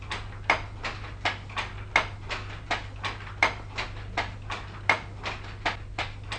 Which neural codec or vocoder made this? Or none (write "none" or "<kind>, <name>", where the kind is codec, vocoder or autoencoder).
none